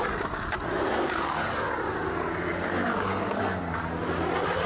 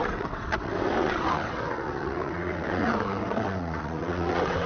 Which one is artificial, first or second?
second